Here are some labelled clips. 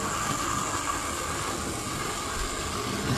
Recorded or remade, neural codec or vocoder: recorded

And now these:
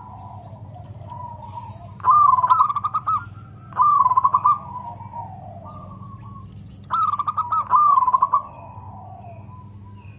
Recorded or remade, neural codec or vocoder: recorded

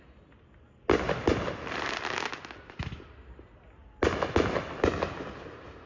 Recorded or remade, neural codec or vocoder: recorded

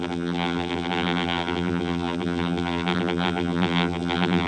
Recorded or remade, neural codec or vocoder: remade, vocoder, BigVGAN v2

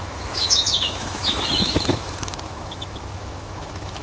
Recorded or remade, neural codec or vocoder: remade, autoencoder, DAC-VAE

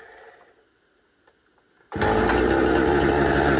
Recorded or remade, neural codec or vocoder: recorded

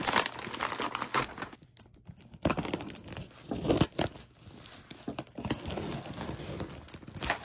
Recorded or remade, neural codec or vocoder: recorded